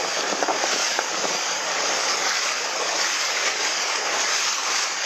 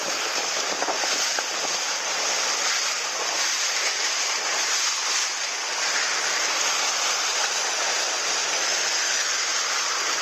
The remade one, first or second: first